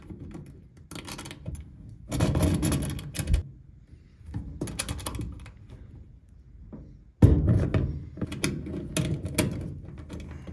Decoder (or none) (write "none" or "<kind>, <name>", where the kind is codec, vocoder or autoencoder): none